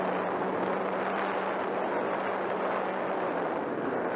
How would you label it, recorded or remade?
recorded